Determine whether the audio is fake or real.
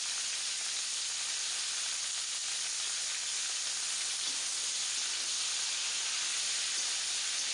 real